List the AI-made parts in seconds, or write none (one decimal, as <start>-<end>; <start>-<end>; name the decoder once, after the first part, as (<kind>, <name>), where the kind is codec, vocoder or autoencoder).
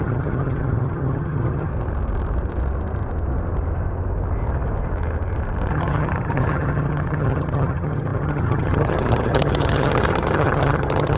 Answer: 0.0-1.7 (vocoder, HiFi-GAN); 5.7-11.2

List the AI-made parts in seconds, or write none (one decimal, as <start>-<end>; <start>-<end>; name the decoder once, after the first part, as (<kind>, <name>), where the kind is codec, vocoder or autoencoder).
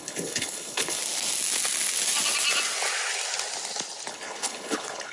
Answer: 0.0-1.0 (codec, HILCodec); 4.1-5.1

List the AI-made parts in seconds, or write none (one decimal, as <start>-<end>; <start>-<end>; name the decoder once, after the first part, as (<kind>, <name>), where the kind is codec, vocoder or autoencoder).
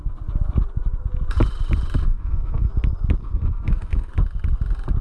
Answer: 2.1-2.7 (codec, SNAC); 3.2-4.1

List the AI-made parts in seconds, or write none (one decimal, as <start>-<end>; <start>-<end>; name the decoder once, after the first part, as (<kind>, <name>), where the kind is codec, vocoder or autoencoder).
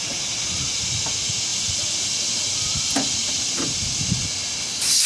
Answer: 1.5-4.0 (vocoder, BigVGAN v2)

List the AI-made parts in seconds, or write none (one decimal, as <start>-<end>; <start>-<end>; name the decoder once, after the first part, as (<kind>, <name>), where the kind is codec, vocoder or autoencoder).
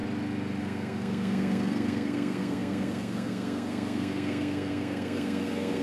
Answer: 0.6-5.8 (codec, SNAC)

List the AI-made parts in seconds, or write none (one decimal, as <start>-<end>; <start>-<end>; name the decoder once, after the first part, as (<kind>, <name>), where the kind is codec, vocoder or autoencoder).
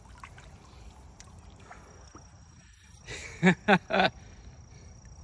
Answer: none